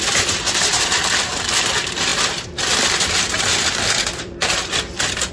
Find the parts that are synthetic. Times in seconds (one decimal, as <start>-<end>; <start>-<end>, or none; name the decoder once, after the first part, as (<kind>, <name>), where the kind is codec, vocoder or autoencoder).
0.0-5.3 (vocoder, BigVGAN v2)